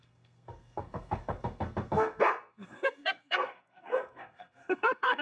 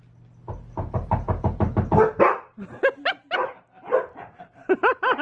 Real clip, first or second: second